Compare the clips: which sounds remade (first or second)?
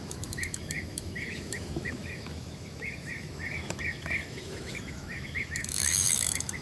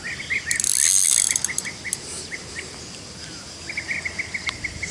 first